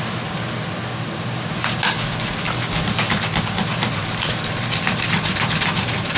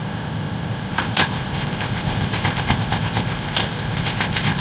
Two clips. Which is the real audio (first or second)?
first